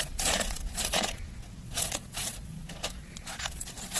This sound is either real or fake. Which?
fake